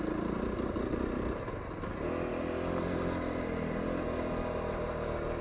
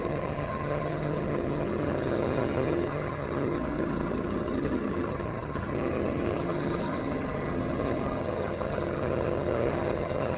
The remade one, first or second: second